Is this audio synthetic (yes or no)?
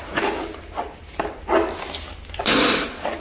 no